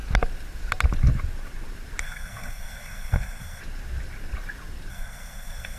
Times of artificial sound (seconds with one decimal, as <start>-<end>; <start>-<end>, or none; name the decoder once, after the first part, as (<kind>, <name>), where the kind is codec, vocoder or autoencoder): 2.0-3.6 (codec, SNAC); 4.9-5.8